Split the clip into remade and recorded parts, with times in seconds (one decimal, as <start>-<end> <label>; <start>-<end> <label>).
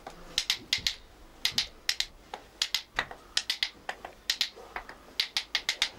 0.0-6.0 recorded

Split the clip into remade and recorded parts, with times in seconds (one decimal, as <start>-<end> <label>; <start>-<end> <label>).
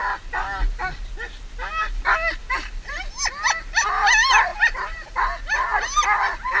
0.0-4.5 recorded; 4.5-5.1 remade; 5.1-6.6 recorded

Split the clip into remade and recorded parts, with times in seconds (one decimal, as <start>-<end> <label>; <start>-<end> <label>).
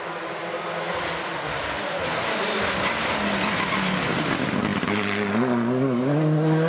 0.0-6.7 recorded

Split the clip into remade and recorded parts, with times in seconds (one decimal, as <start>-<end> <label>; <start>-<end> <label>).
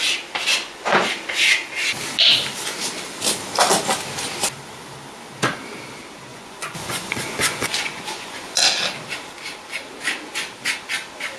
0.0-0.5 recorded; 0.5-1.1 remade; 1.1-6.3 recorded; 6.3-8.6 remade; 8.6-11.4 recorded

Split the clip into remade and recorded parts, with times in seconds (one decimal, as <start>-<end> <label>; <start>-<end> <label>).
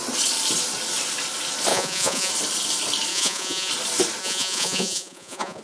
0.0-1.7 recorded; 1.7-2.3 remade; 2.3-3.1 recorded; 3.1-3.7 remade; 3.7-4.2 recorded; 4.2-5.6 remade